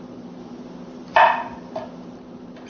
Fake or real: real